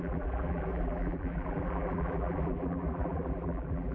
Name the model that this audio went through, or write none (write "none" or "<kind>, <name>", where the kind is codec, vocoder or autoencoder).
vocoder, BigVGAN v2